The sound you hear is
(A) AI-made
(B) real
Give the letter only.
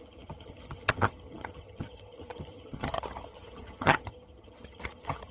A